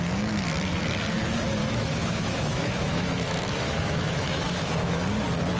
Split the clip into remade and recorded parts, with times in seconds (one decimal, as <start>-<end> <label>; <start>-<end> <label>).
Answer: 0.0-1.6 recorded; 1.6-5.0 remade; 5.0-5.6 recorded